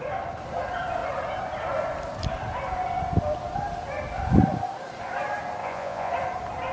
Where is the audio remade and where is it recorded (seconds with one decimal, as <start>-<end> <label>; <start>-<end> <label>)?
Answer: 0.0-5.6 recorded; 5.6-6.1 remade; 6.1-6.7 recorded